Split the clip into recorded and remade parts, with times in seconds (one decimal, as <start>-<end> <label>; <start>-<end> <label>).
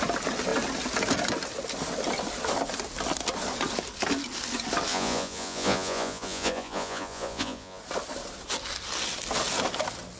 0.0-4.9 recorded; 4.9-7.8 remade; 7.8-10.2 recorded